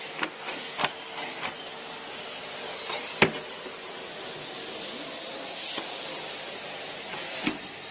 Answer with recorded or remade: recorded